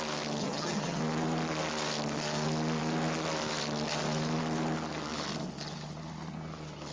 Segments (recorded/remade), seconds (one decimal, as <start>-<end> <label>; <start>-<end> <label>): 0.0-0.4 recorded; 0.4-1.0 remade; 1.0-6.9 recorded